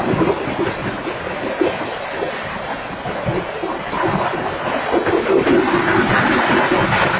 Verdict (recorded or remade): recorded